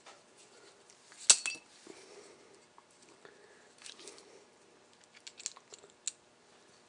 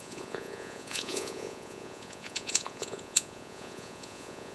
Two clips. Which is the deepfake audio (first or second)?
second